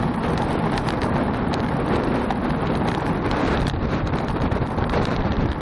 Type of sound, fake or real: fake